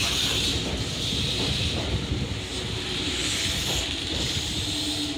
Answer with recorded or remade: recorded